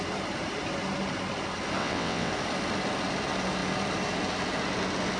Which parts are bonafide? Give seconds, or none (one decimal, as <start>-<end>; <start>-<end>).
0.0-1.8; 2.3-5.2